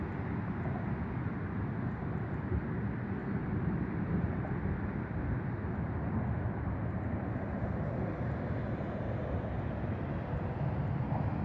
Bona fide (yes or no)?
yes